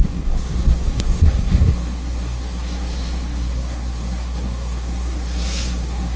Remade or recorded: remade